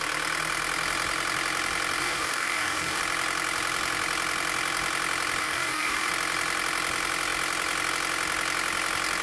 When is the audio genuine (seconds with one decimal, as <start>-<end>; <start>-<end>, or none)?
0.0-2.0; 3.0-5.4; 6.1-9.2